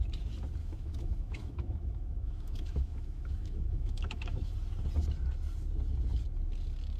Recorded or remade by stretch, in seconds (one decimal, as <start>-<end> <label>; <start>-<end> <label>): 0.0-0.6 recorded; 0.6-4.5 remade; 4.5-7.0 recorded